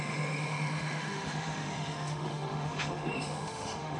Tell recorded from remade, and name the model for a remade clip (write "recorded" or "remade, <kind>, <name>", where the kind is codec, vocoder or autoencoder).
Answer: remade, autoencoder, DAC-VAE